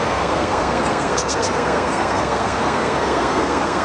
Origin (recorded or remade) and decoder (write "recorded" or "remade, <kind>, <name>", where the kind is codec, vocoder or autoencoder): remade, codec, SNAC